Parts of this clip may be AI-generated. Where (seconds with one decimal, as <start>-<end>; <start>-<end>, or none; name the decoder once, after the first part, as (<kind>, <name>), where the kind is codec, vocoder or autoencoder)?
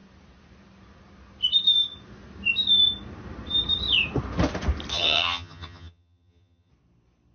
4.9-6.7 (vocoder, HiFi-GAN)